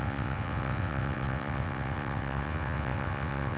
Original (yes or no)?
no